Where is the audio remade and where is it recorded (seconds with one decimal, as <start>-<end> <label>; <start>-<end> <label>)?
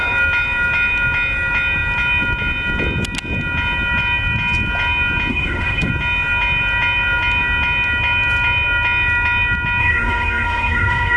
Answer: 0.0-5.3 recorded; 5.3-5.9 remade; 5.9-9.8 recorded; 9.8-11.2 remade